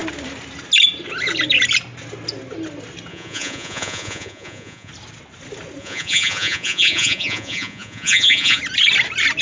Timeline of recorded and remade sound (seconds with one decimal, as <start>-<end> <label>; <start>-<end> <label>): 0.0-3.1 recorded; 3.1-4.9 remade; 4.9-5.8 recorded; 5.8-8.6 remade; 8.6-9.4 recorded

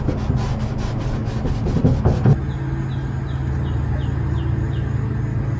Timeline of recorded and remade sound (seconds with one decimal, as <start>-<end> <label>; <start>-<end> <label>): 0.0-5.6 recorded

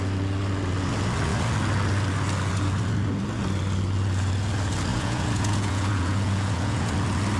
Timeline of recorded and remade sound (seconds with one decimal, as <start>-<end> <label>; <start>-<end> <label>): 0.0-4.9 recorded; 4.9-6.9 remade; 6.9-7.4 recorded

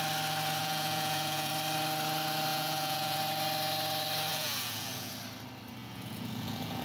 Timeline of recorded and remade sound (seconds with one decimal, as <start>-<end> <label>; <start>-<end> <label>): 0.0-0.6 recorded; 0.6-1.5 remade; 1.5-2.5 recorded; 2.5-3.2 remade; 3.2-4.3 recorded; 4.3-5.1 remade; 5.1-5.8 recorded; 5.8-6.8 remade

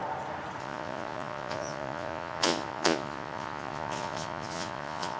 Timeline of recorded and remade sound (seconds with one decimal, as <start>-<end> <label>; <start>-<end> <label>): 0.0-0.6 recorded; 0.6-5.2 remade

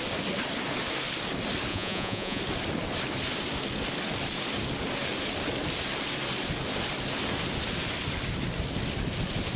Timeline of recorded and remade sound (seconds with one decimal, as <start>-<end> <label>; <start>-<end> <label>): 0.0-1.7 recorded; 1.7-2.4 remade; 2.4-9.6 recorded

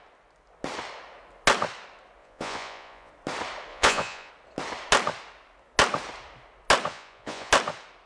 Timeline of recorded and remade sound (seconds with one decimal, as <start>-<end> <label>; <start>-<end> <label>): 0.0-2.2 recorded; 2.2-3.1 remade; 3.1-3.7 recorded; 3.7-4.3 remade; 4.3-6.9 recorded; 6.9-7.5 remade; 7.5-8.1 recorded